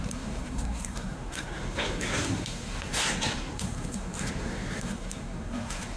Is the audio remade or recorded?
remade